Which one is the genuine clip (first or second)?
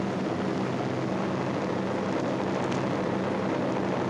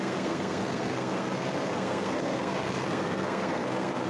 first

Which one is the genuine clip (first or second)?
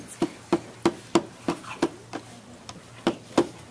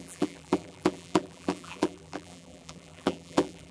first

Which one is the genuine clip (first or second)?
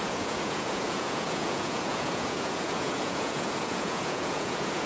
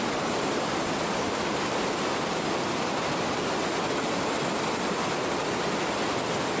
second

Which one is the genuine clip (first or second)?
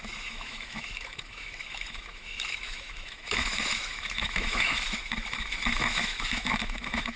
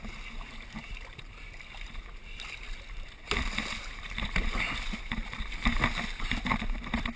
second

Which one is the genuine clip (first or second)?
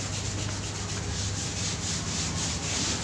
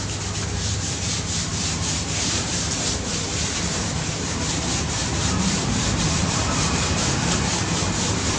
first